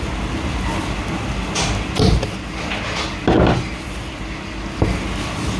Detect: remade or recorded recorded